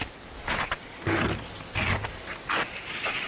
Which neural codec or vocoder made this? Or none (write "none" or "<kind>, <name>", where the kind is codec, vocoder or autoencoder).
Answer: none